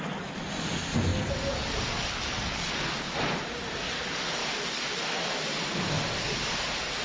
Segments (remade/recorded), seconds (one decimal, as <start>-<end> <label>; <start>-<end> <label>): 0.0-7.0 recorded